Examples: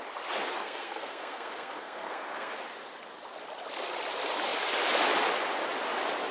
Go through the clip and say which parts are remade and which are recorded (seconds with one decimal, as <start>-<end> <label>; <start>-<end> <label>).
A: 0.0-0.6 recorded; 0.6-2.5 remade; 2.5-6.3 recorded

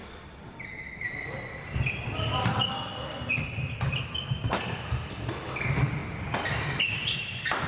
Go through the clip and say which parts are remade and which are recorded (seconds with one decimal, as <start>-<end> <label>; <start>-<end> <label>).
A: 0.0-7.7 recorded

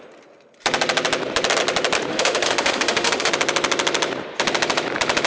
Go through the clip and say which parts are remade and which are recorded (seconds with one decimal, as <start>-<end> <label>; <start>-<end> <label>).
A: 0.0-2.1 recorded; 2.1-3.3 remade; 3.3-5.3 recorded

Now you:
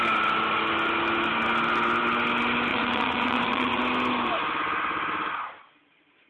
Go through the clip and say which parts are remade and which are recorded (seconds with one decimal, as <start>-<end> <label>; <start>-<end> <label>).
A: 0.0-2.7 recorded; 2.7-3.8 remade; 3.8-6.3 recorded

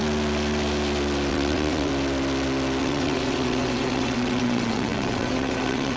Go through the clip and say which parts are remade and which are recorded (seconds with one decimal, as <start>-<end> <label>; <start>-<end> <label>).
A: 0.0-1.3 recorded; 1.3-1.9 remade; 1.9-2.8 recorded; 2.8-6.0 remade